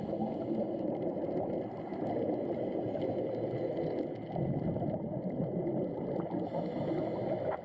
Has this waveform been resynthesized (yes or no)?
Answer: no